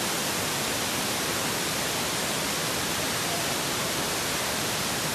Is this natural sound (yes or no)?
yes